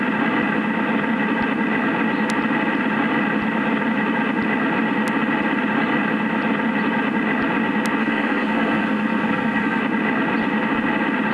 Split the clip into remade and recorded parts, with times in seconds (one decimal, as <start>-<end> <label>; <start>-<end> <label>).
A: 0.0-8.0 recorded; 8.0-9.8 remade; 9.8-11.3 recorded